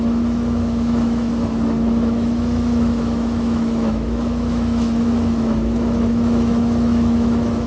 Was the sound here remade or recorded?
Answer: remade